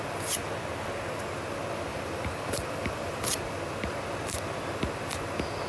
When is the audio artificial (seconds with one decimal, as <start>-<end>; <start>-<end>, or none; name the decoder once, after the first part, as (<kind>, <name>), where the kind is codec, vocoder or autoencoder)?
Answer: 1.9-3.4 (vocoder, BigVGAN v2)